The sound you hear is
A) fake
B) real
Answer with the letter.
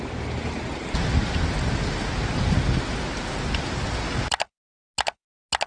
B